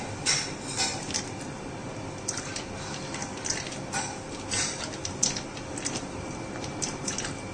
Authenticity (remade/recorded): recorded